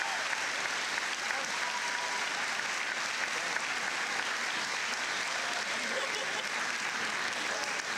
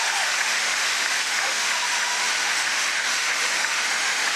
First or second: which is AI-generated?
second